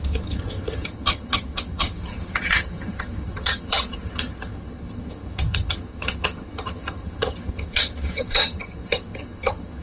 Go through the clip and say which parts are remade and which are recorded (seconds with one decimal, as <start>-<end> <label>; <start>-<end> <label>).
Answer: 0.0-9.8 remade